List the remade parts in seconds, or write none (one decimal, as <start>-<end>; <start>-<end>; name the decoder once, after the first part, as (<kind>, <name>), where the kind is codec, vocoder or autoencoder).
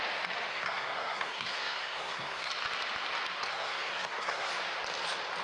0.5-2.5 (codec, SNAC); 3.5-4.5